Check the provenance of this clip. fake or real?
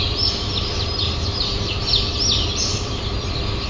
real